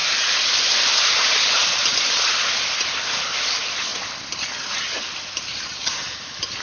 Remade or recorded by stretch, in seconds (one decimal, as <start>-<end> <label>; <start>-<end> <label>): 0.0-3.9 remade; 3.9-4.7 recorded; 4.7-6.6 remade